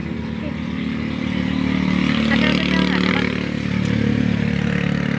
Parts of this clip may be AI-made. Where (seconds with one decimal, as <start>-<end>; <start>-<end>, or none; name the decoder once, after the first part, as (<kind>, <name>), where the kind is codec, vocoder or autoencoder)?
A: none